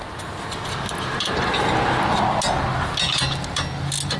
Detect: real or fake real